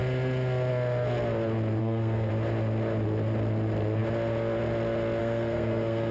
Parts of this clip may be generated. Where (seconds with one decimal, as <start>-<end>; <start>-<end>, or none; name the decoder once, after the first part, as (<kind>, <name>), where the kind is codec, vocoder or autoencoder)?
1.8-2.3 (codec, SNAC); 5.2-6.1